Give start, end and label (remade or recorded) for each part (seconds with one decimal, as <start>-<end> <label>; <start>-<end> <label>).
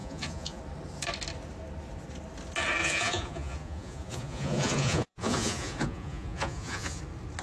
0.0-0.6 remade; 0.6-2.8 recorded; 2.8-7.0 remade; 7.0-7.4 recorded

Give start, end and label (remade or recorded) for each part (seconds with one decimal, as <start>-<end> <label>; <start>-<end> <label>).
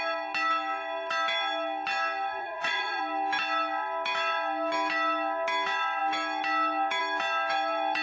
0.0-2.4 recorded; 2.4-3.0 remade; 3.0-8.0 recorded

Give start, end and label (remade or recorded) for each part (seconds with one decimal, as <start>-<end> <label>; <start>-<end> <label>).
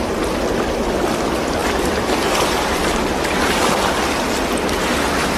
0.0-1.6 recorded; 1.6-4.8 remade; 4.8-5.4 recorded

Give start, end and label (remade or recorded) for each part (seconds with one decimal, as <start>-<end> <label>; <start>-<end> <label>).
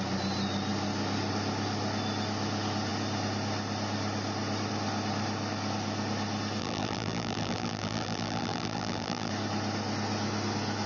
0.0-6.6 recorded; 6.6-9.3 remade; 9.3-10.9 recorded